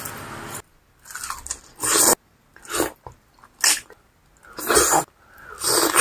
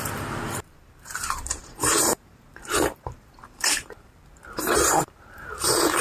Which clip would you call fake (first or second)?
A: second